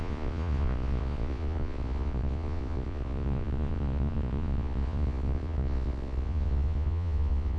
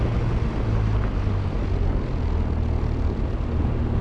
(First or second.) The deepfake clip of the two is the first